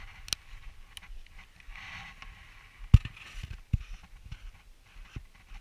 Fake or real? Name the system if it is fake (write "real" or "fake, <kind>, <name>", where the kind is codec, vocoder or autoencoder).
real